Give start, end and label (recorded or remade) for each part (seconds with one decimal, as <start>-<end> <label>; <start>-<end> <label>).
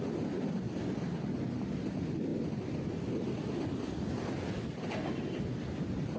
0.0-6.2 recorded